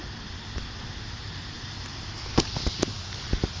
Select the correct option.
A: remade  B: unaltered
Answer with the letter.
B